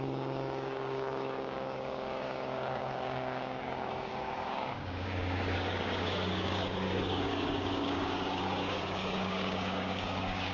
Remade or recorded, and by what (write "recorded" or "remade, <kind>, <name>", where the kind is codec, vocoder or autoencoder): remade, codec, DAC